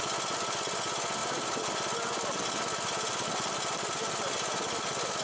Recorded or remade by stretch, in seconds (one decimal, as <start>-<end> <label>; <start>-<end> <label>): 0.0-5.2 recorded